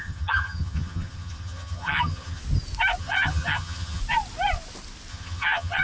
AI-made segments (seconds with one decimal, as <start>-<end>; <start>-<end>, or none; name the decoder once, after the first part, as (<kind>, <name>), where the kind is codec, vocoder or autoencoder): 0.0-2.4 (vocoder, HiFi-GAN); 3.0-4.0; 5.1-5.8